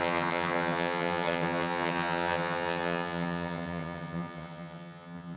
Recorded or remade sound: remade